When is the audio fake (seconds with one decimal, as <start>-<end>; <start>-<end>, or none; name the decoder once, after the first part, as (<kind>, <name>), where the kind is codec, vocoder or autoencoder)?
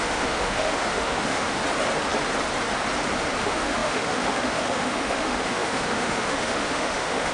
0.0-1.6 (autoencoder, DAC-VAE); 3.4-7.3